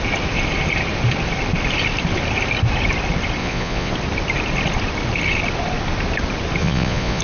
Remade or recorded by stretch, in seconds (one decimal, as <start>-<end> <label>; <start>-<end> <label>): 0.0-3.4 recorded; 3.4-3.9 remade; 3.9-6.6 recorded; 6.6-7.2 remade